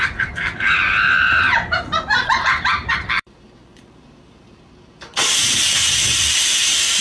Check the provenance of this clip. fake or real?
fake